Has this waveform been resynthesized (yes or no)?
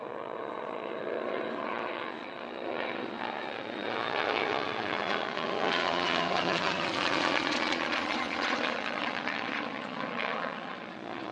yes